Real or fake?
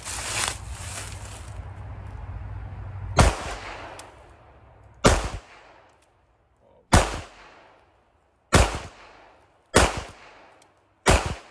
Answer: real